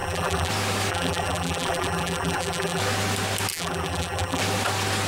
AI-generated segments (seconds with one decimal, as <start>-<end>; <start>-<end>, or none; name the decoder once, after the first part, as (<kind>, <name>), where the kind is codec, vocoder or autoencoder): 0.0-0.5 (vocoder, BigVGAN v2); 0.9-2.8; 3.5-4.4